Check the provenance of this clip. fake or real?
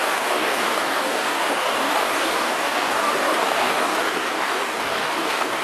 fake